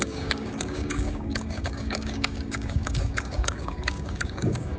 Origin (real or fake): fake